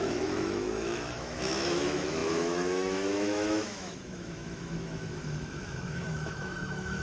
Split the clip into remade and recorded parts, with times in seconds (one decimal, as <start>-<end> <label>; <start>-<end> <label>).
0.0-7.0 remade